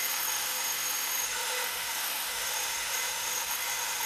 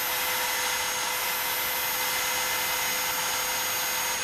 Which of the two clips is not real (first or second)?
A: first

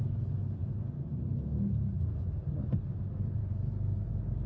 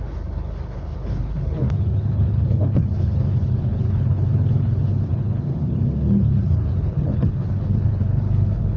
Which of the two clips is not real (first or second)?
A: second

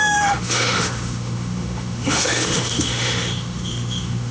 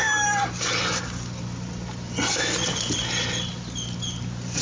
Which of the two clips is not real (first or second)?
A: first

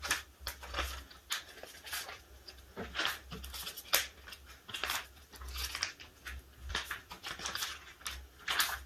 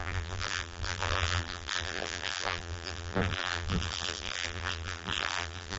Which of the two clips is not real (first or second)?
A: second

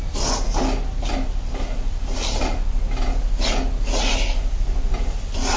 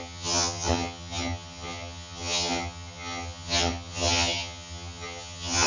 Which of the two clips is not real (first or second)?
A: second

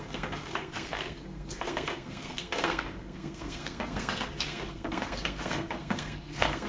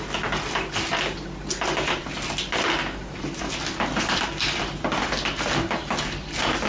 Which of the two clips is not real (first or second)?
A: first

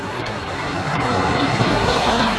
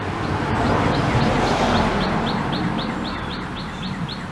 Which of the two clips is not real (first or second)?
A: first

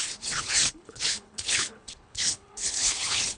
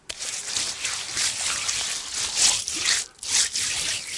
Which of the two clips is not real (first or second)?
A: first